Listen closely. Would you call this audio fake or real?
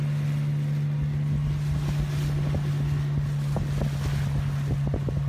real